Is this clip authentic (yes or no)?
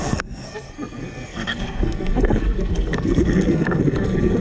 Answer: no